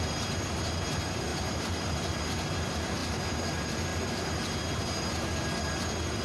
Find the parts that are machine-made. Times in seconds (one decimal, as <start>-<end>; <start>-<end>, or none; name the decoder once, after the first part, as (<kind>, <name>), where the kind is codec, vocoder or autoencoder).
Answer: 1.3-1.9 (vocoder, BigVGAN v2)